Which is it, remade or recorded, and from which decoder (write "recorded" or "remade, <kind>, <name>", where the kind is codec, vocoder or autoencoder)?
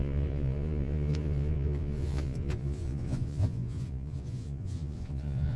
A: remade, vocoder, Vocos